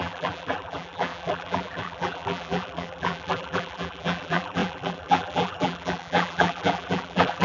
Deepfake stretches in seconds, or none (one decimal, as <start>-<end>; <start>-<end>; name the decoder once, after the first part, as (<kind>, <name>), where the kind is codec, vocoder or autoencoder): 0.0-7.4 (vocoder, BigVGAN v2)